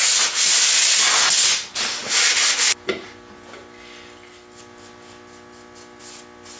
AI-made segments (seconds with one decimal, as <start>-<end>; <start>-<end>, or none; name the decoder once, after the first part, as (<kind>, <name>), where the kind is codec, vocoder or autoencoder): none